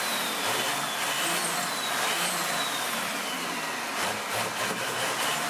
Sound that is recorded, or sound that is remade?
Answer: recorded